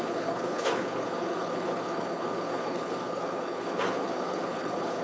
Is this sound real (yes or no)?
no